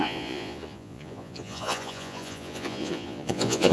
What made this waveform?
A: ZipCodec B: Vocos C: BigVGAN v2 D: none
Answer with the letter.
B